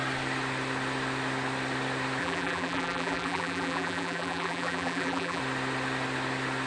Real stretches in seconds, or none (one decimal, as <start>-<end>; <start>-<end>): 0.0-2.2; 5.4-6.7